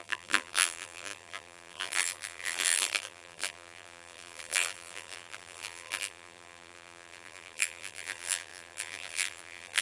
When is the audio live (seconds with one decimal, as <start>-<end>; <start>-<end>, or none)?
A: none